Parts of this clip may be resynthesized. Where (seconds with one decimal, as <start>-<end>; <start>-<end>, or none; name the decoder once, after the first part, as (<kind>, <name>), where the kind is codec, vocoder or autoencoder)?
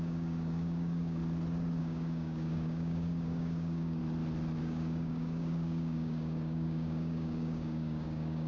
0.0-1.2 (codec, DAC); 1.8-4.0; 4.6-8.5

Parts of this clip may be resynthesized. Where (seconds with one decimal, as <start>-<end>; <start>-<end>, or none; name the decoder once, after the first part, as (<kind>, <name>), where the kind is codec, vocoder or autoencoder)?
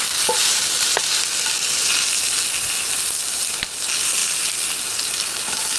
none